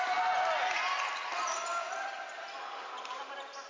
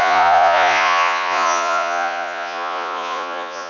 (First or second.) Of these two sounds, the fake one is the second